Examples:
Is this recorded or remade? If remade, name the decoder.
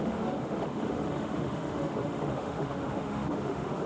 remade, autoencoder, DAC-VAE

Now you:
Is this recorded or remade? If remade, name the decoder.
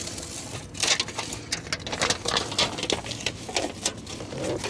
recorded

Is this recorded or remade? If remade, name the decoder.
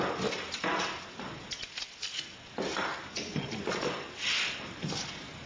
recorded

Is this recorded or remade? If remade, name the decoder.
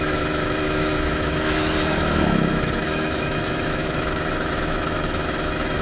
remade, autoencoder, DAC-VAE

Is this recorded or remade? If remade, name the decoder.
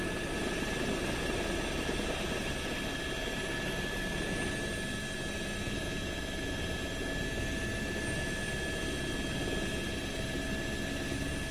recorded